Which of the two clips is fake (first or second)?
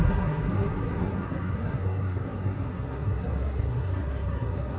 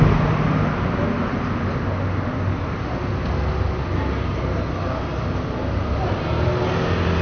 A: first